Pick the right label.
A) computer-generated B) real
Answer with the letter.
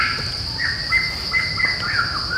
B